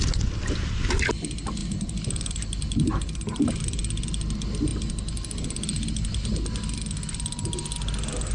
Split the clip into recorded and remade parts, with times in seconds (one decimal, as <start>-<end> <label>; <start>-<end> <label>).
0.0-1.6 recorded; 1.6-3.5 remade; 3.5-8.3 recorded